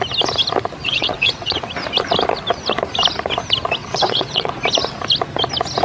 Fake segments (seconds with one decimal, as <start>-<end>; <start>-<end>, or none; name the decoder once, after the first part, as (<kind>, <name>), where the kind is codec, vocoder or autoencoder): 0.8-1.7 (vocoder, WaveNeXt); 3.8-4.5